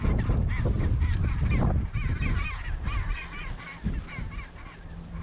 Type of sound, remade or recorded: recorded